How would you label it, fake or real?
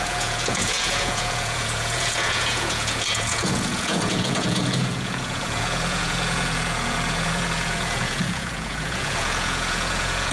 fake